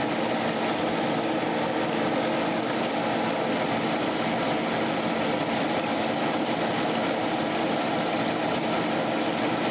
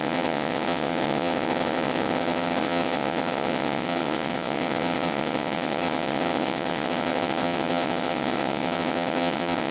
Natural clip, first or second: first